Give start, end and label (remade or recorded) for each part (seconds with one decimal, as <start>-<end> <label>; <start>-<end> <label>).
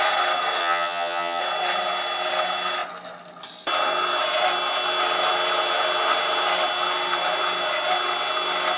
0.0-0.6 recorded; 0.6-1.4 remade; 1.4-8.8 recorded